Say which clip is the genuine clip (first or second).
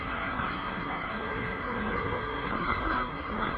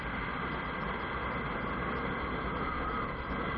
second